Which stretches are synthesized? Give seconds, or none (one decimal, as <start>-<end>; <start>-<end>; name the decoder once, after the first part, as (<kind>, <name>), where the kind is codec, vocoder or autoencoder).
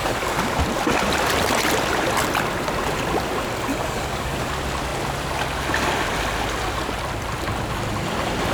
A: 0.0-0.6 (codec, DAC); 3.7-4.5